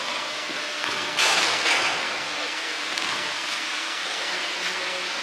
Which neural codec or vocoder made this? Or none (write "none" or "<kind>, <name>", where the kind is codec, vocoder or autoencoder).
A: codec, SNAC